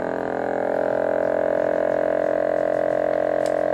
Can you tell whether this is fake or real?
real